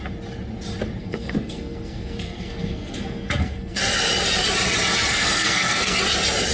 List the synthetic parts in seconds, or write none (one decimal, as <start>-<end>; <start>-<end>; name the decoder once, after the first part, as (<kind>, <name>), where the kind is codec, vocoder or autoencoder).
1.0-3.8 (codec, SNAC); 5.1-6.0